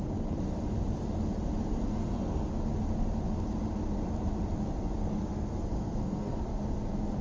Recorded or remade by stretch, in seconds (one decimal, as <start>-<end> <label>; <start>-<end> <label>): 0.0-1.9 recorded; 1.9-2.5 remade; 2.5-5.0 recorded; 5.0-6.4 remade; 6.4-7.2 recorded